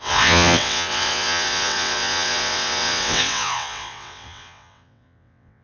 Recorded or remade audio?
remade